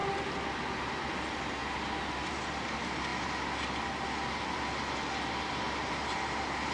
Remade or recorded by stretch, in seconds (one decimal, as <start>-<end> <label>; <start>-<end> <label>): 0.0-1.0 remade; 1.0-6.7 recorded